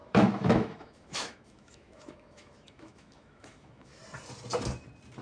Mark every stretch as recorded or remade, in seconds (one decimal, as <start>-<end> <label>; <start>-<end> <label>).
0.0-4.0 remade; 4.0-5.2 recorded

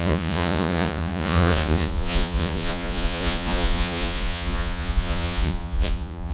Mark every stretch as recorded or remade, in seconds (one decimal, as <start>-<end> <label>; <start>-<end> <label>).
0.0-6.3 remade

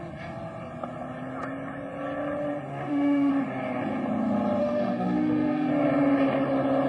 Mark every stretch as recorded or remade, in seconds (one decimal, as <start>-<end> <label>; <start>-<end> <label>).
0.0-2.7 recorded; 2.7-3.3 remade; 3.3-4.6 recorded; 4.6-5.7 remade; 5.7-6.9 recorded